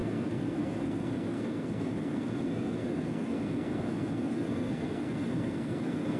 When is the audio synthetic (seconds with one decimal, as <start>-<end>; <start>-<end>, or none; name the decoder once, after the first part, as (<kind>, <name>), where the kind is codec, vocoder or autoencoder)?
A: 0.0-6.2 (codec, SNAC)